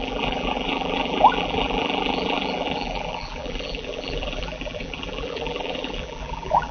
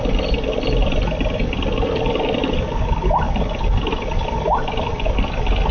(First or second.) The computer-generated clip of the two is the first